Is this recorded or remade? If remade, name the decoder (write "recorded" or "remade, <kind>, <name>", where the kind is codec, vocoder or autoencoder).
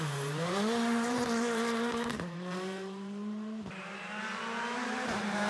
remade, vocoder, BigVGAN v2